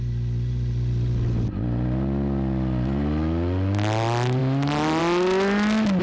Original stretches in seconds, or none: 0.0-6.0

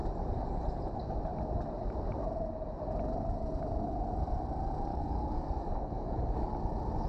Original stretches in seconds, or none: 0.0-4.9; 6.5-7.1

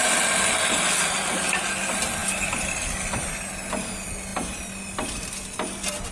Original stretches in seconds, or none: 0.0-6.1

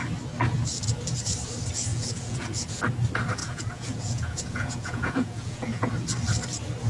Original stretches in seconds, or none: 0.0-1.9; 2.8-3.4; 5.9-6.9

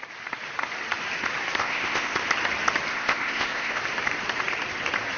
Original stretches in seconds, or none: 0.0-1.6; 2.2-2.9; 3.8-5.2

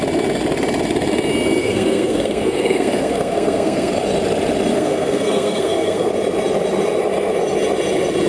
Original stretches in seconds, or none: 0.0-1.6; 3.9-4.7; 6.1-8.3

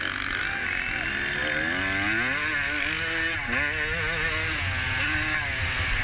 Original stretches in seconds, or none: 0.0-6.0

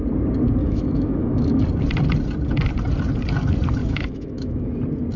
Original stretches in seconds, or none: 0.0-0.6; 1.6-3.8; 4.7-5.2